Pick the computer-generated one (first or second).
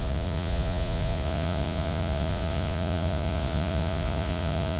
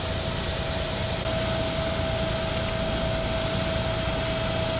first